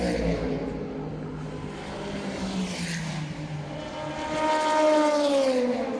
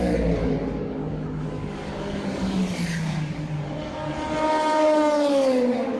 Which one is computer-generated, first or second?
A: second